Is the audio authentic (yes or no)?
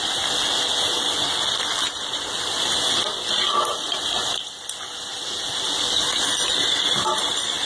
yes